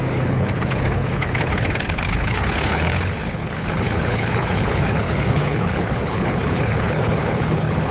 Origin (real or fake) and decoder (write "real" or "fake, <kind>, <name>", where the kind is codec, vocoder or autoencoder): fake, codec, HILCodec